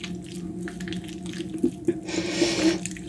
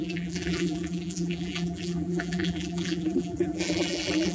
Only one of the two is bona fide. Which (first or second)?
first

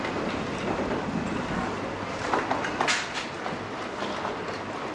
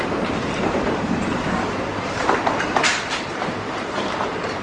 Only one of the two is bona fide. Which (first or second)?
first